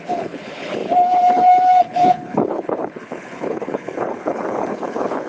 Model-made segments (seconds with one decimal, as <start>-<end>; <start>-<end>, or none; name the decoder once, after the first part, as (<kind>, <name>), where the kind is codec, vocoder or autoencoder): 0.0-5.3 (codec, HILCodec)